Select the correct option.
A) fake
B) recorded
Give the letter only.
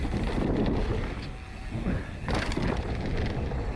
B